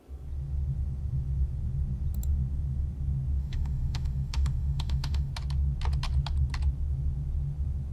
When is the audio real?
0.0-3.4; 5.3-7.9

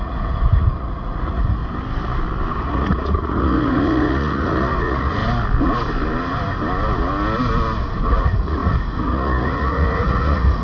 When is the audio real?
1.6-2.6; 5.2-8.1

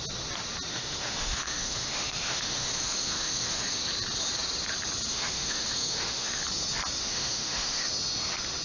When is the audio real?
0.0-0.7; 3.8-5.1; 6.4-7.0; 7.9-8.6

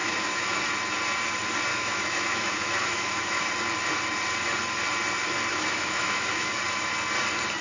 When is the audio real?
0.6-1.7; 3.5-5.5; 6.6-7.6

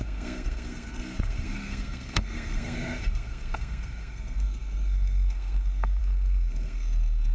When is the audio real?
none

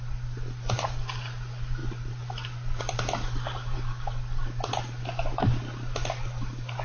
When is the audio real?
0.0-6.8

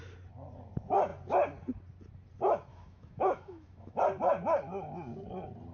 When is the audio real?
0.0-2.7; 4.0-5.7

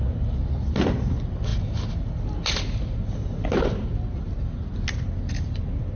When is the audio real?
0.0-6.0